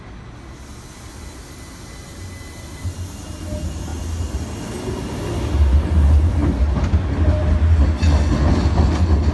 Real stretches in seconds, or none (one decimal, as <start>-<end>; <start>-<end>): 0.0-9.3